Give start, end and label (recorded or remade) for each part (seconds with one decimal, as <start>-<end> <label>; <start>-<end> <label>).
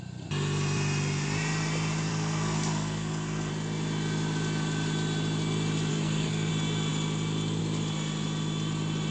0.0-2.1 recorded; 2.1-3.5 remade; 3.5-5.9 recorded; 5.9-6.5 remade; 6.5-9.1 recorded